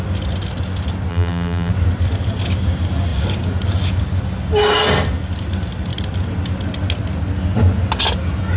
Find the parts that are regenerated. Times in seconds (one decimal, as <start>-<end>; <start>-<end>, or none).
1.1-1.7